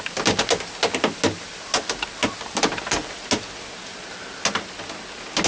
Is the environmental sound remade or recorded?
recorded